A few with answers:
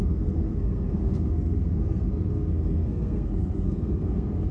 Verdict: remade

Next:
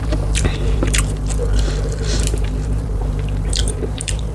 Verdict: remade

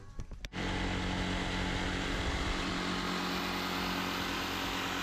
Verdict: recorded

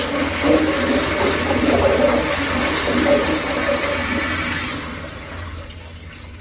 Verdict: recorded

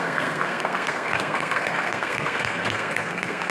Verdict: remade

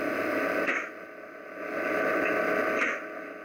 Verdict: recorded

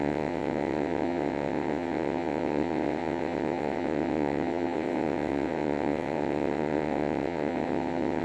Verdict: remade